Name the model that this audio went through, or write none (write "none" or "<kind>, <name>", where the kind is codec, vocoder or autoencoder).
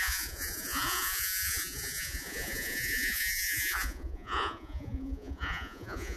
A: vocoder, Vocos